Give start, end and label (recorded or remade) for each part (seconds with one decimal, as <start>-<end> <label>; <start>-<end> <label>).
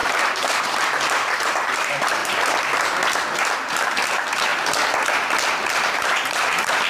0.0-2.2 remade; 2.2-3.9 recorded; 3.9-4.5 remade; 4.5-5.7 recorded; 5.7-6.9 remade